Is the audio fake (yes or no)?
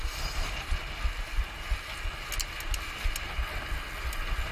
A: no